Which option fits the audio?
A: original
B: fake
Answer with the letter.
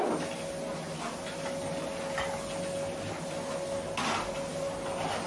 A